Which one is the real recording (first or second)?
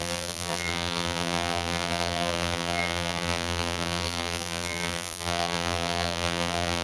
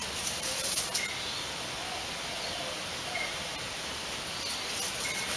second